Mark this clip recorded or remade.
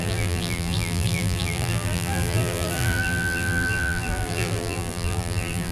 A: remade